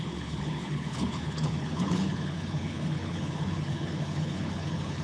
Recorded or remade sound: remade